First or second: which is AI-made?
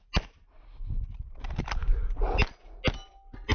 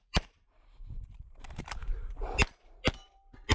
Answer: second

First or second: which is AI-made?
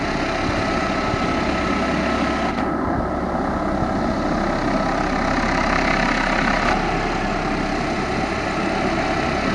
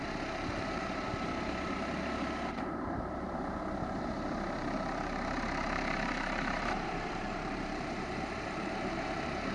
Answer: second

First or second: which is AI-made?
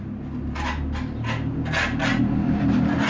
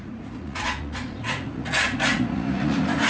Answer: second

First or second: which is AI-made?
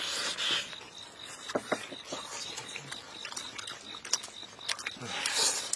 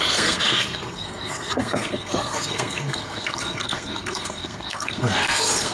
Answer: second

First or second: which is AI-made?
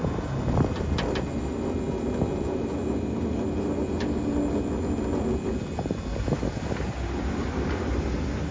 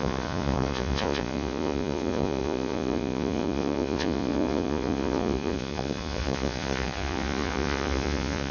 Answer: second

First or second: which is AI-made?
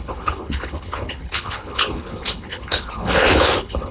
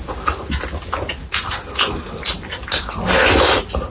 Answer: first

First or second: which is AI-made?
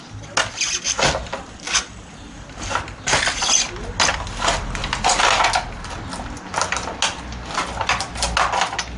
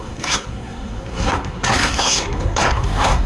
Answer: second